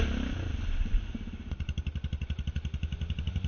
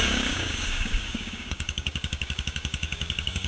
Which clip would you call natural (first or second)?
first